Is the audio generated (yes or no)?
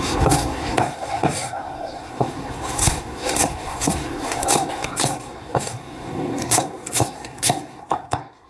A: yes